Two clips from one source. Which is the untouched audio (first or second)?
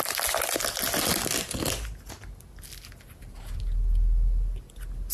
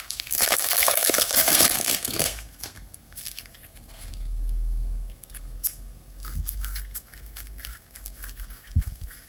first